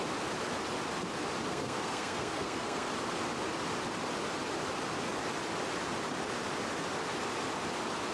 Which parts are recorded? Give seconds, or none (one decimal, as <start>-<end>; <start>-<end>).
0.0-1.5; 2.9-8.1